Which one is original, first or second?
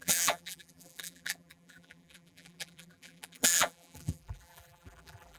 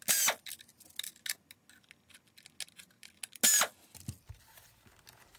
second